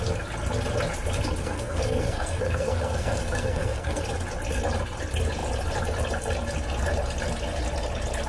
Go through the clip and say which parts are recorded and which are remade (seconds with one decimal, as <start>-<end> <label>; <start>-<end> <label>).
0.0-1.4 recorded; 1.4-4.0 remade; 4.0-8.3 recorded